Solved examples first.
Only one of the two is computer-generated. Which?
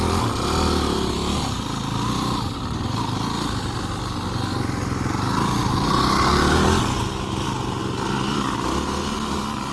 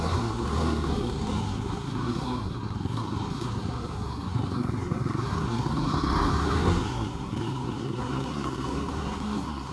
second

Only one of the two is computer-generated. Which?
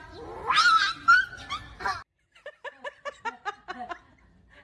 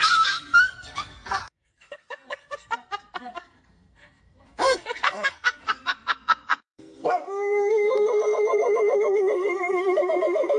second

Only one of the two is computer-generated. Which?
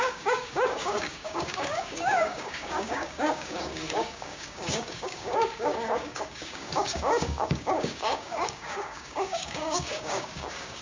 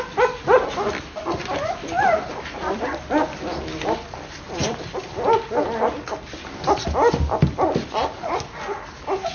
first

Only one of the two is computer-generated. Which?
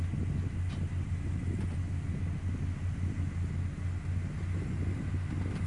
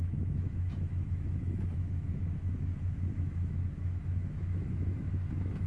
second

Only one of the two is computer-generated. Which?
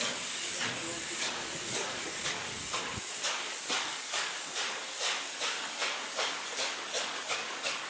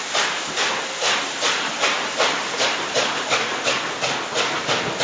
first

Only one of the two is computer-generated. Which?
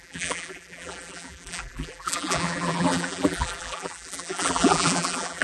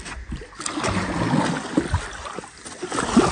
first